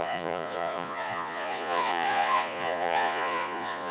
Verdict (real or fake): fake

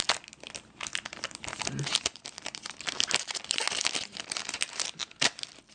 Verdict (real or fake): real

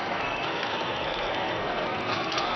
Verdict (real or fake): fake